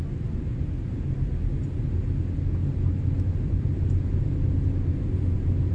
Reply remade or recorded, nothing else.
recorded